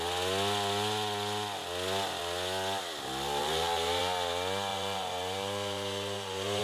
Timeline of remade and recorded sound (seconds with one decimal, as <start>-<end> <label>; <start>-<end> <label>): 0.0-3.4 recorded; 3.4-4.0 remade; 4.0-4.7 recorded; 4.7-6.6 remade